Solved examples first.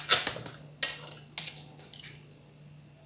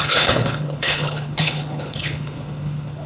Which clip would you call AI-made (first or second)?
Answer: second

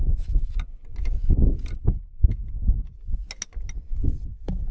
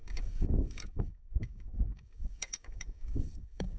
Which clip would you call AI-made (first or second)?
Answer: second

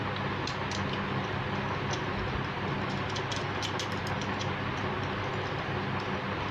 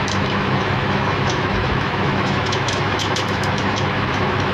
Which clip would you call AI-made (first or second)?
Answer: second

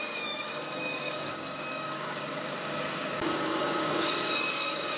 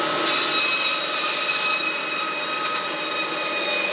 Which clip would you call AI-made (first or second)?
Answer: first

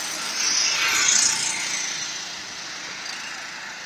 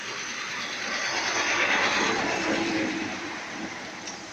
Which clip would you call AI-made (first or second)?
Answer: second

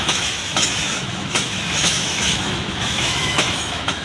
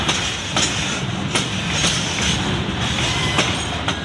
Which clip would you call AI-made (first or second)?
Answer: first